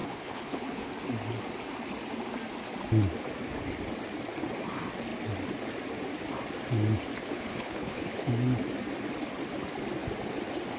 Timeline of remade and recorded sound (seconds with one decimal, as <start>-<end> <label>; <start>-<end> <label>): 0.0-0.9 remade; 0.9-7.3 recorded; 7.3-8.3 remade; 8.3-10.8 recorded